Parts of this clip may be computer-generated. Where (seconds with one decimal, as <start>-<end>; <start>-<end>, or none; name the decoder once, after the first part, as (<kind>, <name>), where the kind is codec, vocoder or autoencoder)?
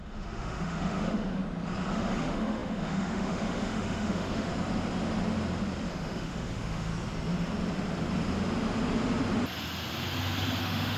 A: 0.0-1.4 (autoencoder, DAC-VAE); 1.9-4.5; 5.9-6.9; 10.6-11.0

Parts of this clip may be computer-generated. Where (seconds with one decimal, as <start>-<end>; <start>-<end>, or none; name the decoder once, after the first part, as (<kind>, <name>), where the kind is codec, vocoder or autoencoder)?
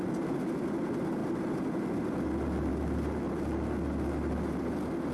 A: none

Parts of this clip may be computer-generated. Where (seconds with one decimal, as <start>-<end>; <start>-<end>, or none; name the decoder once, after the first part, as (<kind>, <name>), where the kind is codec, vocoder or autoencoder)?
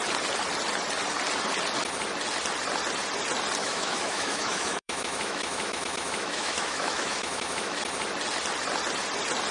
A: 3.6-7.8 (autoencoder, DAC-VAE)